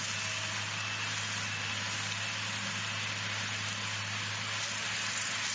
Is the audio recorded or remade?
recorded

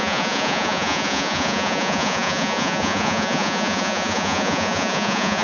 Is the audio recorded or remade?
remade